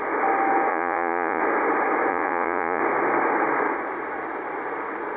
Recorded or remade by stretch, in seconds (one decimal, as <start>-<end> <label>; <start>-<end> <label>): 0.0-0.7 recorded; 0.7-1.4 remade; 1.4-2.1 recorded; 2.1-2.8 remade; 2.8-5.2 recorded